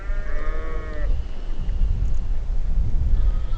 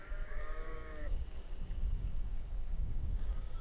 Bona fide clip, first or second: first